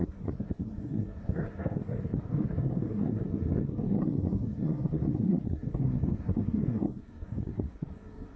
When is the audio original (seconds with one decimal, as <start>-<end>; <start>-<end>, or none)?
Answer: none